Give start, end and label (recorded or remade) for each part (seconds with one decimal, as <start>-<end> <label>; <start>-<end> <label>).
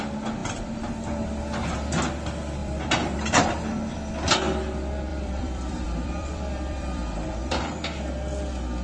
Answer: 0.0-2.6 recorded; 2.6-4.1 remade; 4.1-5.1 recorded; 5.1-7.6 remade; 7.6-8.8 recorded